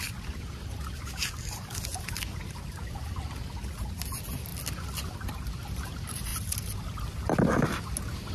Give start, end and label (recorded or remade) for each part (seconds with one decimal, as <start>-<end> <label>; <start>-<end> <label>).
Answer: 0.0-8.3 recorded

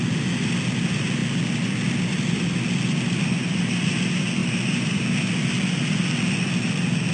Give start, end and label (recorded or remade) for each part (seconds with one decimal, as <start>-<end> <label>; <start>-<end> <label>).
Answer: 0.0-4.4 recorded; 4.4-5.3 remade; 5.3-7.1 recorded